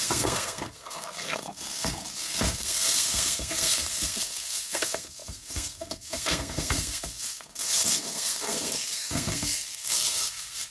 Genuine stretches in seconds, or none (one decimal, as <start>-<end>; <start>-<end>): none